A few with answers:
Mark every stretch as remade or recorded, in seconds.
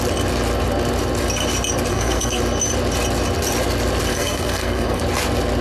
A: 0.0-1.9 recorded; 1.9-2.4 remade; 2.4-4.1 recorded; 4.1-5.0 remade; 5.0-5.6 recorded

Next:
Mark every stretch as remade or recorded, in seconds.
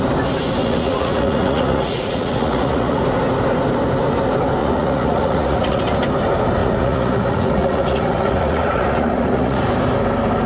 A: 0.0-0.6 recorded; 0.6-3.0 remade; 3.0-4.6 recorded; 4.6-5.8 remade; 5.8-6.6 recorded; 6.6-9.6 remade; 9.6-10.5 recorded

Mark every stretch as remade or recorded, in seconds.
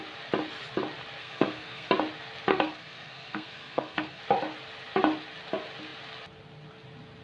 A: 0.0-1.2 recorded; 1.2-1.9 remade; 1.9-2.5 recorded; 2.5-4.2 remade; 4.2-7.2 recorded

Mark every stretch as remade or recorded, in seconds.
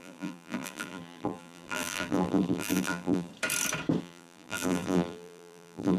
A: 0.0-3.3 remade; 3.3-4.0 recorded; 4.0-6.0 remade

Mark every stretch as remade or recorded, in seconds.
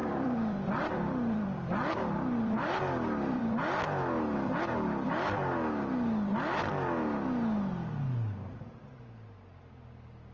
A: 0.0-3.4 remade; 3.4-10.3 recorded